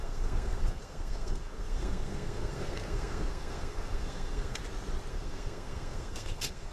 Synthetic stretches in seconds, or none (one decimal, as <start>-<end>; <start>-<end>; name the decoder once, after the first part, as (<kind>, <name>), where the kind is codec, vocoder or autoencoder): 0.0-4.6 (codec, SNAC); 5.1-6.7